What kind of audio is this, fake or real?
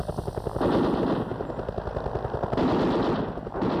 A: real